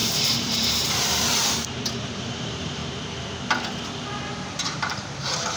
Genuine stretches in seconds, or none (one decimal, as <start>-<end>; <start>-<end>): 2.8-4.6